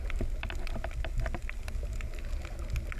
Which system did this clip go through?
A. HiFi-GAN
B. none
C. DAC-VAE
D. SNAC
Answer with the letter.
B